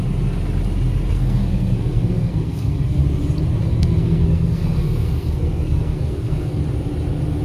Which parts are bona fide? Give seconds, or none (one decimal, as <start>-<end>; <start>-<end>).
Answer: 0.0-1.1; 3.0-3.6; 6.6-7.4